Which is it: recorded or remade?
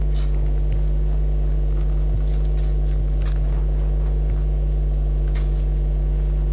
recorded